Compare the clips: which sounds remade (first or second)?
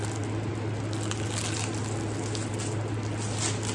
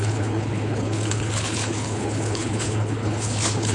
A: second